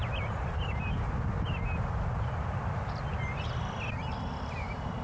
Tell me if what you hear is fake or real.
real